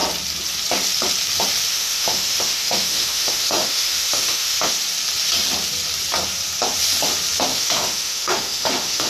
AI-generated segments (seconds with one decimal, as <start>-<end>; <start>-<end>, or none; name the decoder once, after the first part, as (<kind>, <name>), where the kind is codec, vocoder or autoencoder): 1.7-4.7 (autoencoder, DAC-VAE); 7.5-9.1